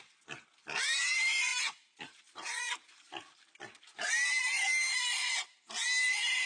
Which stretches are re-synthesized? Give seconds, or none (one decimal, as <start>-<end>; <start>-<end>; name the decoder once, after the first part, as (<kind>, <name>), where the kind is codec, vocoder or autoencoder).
1.5-2.6 (vocoder, BigVGAN v2)